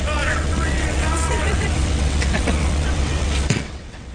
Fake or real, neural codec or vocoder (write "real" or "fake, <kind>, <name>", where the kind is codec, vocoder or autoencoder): fake, vocoder, WaveNeXt